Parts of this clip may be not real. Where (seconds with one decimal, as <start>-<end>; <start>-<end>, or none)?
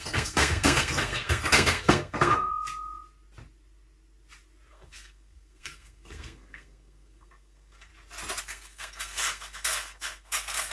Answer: 0.0-2.5; 4.7-7.9; 8.4-10.7